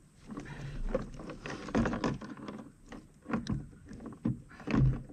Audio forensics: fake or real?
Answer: real